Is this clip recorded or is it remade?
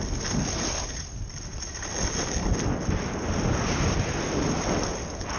recorded